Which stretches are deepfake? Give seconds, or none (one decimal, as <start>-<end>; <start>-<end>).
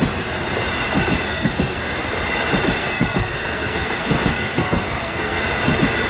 1.3-2.0; 2.8-5.4